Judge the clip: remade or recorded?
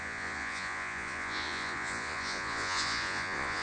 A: remade